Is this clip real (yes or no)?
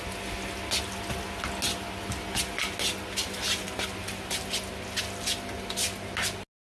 yes